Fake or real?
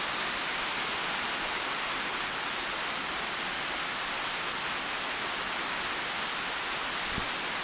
real